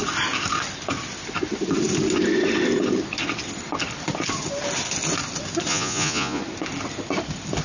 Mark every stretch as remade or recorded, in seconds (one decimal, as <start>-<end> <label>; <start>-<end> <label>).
0.0-5.7 recorded; 5.7-6.4 remade; 6.4-7.6 recorded